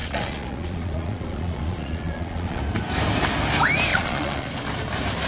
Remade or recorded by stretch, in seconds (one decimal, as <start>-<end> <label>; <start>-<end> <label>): 0.0-2.6 remade; 2.6-3.9 recorded; 3.9-4.5 remade; 4.5-5.3 recorded